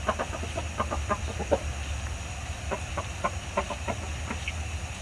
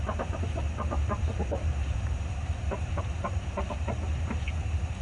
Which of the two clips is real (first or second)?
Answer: first